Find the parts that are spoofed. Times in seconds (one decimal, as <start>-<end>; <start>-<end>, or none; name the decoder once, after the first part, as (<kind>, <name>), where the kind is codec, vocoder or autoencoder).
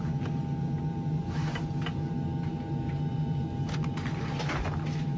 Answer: none